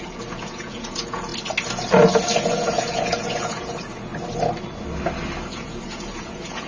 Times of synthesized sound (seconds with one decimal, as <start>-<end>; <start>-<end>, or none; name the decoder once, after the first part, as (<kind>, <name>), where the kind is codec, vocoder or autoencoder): 0.0-1.3 (vocoder, Vocos); 2.4-4.1; 5.4-6.7